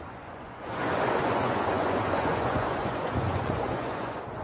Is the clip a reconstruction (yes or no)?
yes